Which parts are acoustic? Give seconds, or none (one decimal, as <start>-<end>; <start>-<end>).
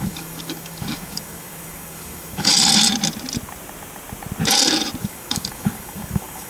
2.5-5.0